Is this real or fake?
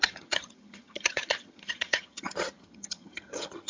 fake